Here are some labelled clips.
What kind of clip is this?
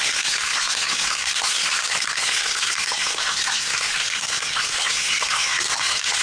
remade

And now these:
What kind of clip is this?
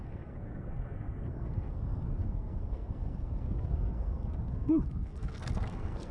remade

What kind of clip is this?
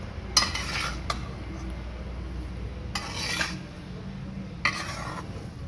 recorded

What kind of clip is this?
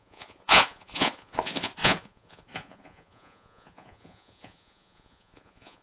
remade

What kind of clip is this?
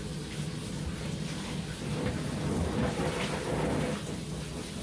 recorded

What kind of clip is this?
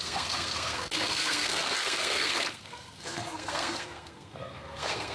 remade